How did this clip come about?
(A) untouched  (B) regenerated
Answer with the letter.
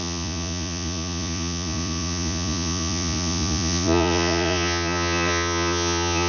B